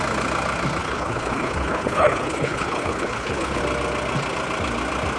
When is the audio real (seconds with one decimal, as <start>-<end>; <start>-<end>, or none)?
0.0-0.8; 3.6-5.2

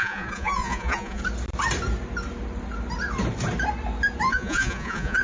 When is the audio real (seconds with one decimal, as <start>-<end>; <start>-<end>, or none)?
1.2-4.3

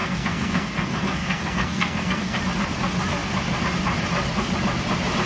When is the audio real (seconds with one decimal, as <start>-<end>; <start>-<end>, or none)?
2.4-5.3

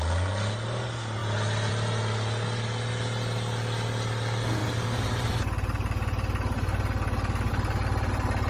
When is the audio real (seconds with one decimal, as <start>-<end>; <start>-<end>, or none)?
0.0-8.5